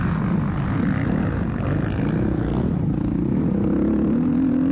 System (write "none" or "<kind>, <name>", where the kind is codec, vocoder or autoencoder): none